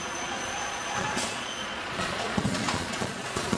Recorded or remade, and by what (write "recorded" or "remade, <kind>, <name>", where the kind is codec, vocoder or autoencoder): remade, vocoder, Vocos